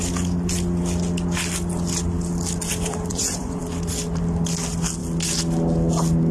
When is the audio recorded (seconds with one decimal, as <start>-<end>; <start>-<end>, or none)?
0.0-3.1; 3.6-6.3

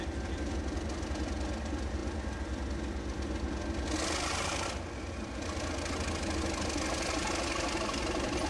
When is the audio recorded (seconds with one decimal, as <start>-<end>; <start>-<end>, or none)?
0.0-8.5